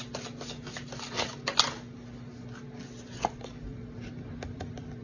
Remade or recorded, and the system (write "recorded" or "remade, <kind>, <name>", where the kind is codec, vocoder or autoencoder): recorded